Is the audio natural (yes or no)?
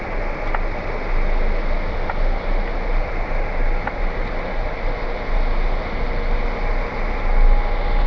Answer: yes